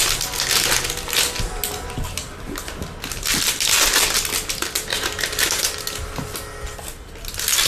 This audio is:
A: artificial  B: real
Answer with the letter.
B